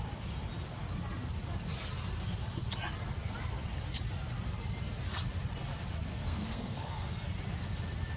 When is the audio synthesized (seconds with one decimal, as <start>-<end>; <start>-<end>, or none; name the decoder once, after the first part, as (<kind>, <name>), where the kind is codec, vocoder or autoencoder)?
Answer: 6.1-7.1 (codec, SNAC)